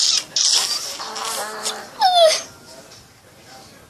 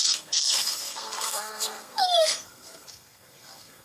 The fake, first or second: second